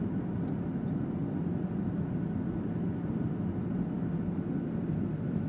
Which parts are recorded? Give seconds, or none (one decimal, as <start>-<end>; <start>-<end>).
0.0-5.5